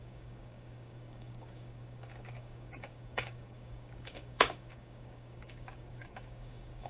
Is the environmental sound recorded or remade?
remade